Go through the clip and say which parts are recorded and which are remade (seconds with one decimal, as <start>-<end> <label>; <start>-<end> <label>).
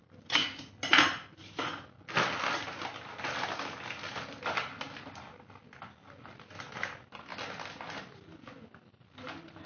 0.0-9.7 recorded